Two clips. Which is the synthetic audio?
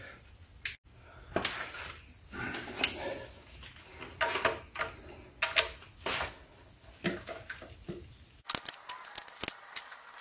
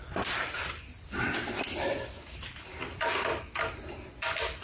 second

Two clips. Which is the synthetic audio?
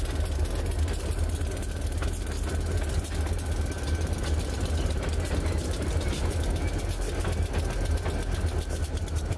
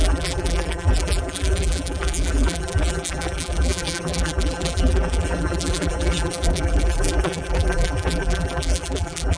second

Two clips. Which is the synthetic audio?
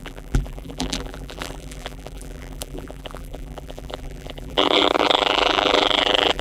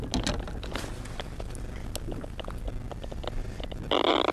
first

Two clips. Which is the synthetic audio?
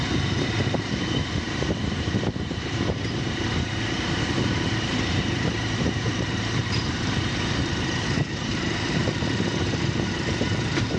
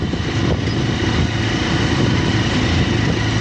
first